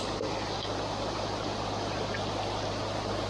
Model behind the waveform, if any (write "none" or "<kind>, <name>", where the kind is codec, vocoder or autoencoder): none